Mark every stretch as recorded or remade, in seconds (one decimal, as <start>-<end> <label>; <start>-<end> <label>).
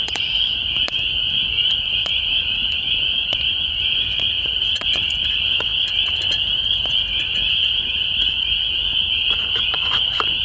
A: 0.0-5.7 remade; 5.7-7.1 recorded; 7.1-10.4 remade